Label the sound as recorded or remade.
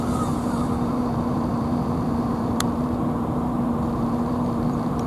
remade